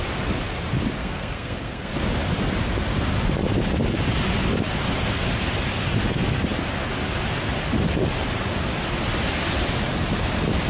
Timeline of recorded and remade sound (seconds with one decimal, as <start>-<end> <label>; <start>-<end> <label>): 0.0-1.0 recorded; 1.0-1.9 remade; 1.9-10.7 recorded